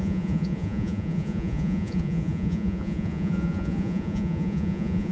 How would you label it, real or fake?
fake